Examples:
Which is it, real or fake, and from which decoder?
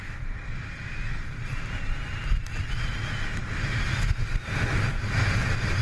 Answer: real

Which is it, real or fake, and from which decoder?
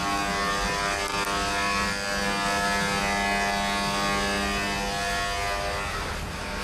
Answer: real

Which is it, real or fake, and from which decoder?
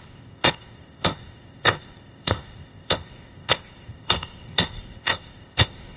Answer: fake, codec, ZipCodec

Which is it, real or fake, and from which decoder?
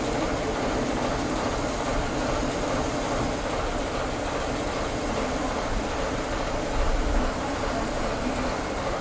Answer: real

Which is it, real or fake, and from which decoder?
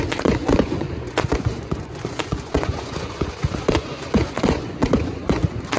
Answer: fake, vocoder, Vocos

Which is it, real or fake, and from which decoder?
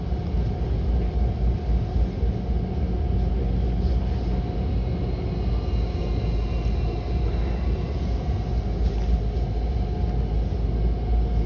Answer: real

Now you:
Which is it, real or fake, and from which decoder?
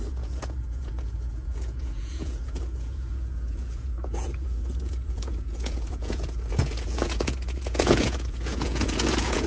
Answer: fake, vocoder, Vocos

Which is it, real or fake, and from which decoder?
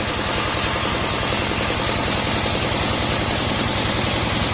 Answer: real